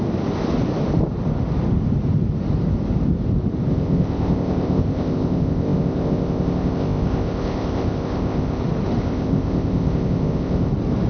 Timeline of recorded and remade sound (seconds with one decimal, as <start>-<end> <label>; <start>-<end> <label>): 0.0-3.7 recorded; 3.7-8.6 remade; 8.6-9.0 recorded; 9.0-10.7 remade; 10.7-11.1 recorded